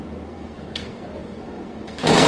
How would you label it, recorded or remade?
remade